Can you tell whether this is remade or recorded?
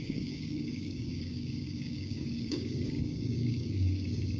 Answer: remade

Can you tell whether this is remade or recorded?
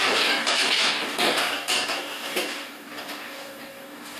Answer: remade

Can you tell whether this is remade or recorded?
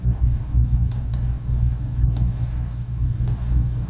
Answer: remade